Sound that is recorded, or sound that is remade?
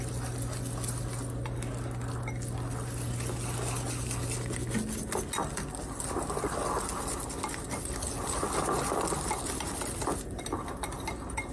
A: recorded